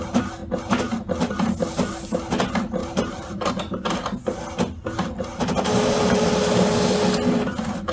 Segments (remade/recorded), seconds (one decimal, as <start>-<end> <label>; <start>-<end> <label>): 0.0-2.8 recorded; 2.8-3.5 remade; 3.5-5.7 recorded; 5.7-6.3 remade; 6.3-7.9 recorded